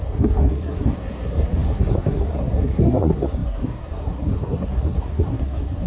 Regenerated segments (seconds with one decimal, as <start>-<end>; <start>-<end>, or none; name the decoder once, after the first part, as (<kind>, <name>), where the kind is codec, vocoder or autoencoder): 0.0-5.9 (codec, SNAC)